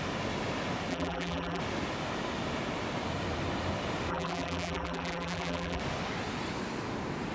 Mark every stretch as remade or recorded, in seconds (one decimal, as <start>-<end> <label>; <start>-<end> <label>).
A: 0.0-0.9 recorded; 0.9-1.6 remade; 1.6-4.1 recorded; 4.1-5.8 remade; 5.8-7.3 recorded

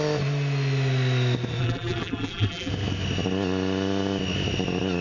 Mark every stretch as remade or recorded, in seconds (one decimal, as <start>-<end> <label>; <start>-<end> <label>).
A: 0.0-1.6 recorded; 1.6-2.7 remade; 2.7-5.0 recorded